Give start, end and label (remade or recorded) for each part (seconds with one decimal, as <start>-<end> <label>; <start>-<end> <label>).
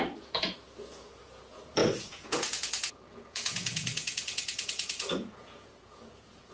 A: 0.0-6.5 remade